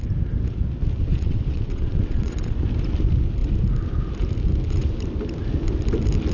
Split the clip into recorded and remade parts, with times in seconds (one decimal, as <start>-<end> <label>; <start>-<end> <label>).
0.0-1.1 recorded; 1.1-2.5 remade; 2.5-6.3 recorded